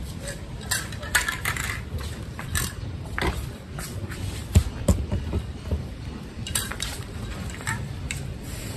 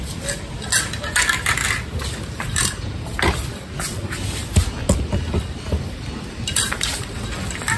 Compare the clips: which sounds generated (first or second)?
first